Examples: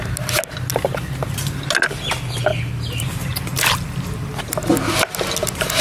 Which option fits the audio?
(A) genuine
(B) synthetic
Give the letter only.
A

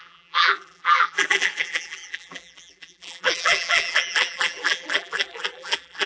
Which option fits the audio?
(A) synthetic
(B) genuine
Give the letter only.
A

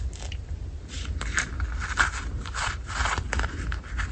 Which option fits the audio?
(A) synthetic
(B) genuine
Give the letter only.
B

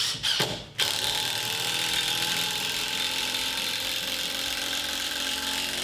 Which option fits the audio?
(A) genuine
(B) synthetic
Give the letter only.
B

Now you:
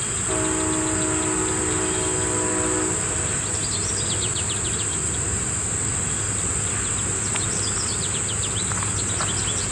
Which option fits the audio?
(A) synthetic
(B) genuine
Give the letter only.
B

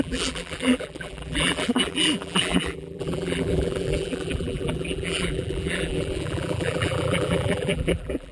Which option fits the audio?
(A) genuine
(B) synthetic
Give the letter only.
B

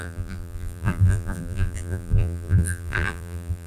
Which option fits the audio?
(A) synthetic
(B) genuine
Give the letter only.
A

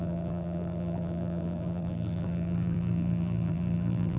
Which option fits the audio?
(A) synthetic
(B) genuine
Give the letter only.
A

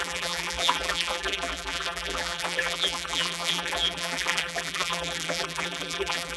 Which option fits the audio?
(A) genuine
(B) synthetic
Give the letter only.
B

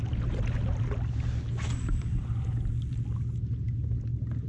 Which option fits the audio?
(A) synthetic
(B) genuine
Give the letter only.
B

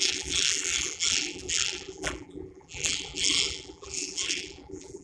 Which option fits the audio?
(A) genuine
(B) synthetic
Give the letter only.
B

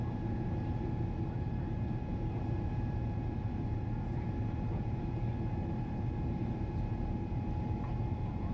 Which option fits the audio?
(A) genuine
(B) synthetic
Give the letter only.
B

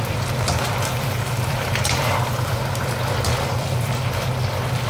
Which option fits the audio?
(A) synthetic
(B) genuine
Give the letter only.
A